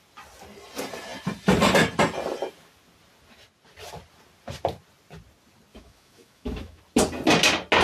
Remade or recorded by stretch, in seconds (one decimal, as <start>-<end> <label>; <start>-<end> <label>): 0.0-5.7 recorded; 5.7-6.8 remade; 6.8-7.8 recorded